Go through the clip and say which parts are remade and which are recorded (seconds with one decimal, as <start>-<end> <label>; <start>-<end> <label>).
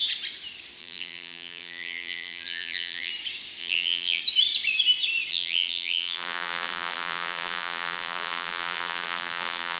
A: 0.0-0.8 recorded; 0.8-3.1 remade; 3.1-3.6 recorded; 3.6-4.2 remade; 4.2-5.3 recorded; 5.3-9.8 remade